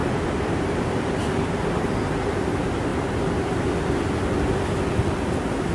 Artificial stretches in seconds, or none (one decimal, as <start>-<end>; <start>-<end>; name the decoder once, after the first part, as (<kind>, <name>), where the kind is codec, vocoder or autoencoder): 0.0-1.9 (vocoder, BigVGAN v2)